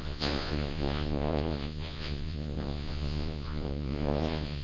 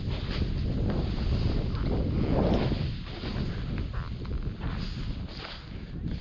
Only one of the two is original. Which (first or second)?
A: second